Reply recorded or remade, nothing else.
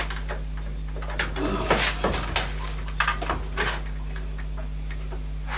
recorded